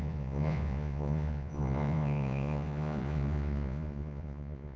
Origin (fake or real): fake